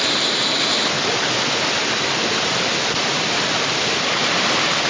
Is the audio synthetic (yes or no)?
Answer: no